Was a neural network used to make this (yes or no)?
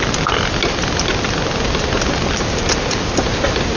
no